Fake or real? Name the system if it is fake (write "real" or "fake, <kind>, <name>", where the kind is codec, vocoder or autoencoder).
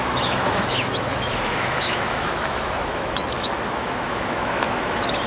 fake, autoencoder, DAC-VAE